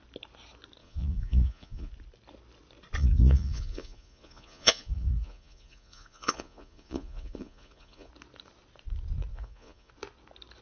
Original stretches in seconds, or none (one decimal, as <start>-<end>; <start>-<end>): 0.0-0.8; 1.9-3.0; 8.1-9.3; 9.9-10.6